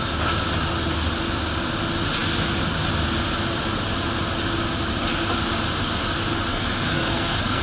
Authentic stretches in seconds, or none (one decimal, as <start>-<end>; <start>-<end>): 0.0-6.5